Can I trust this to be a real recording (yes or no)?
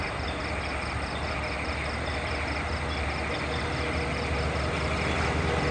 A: yes